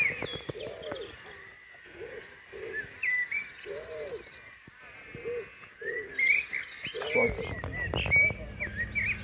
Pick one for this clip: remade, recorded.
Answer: recorded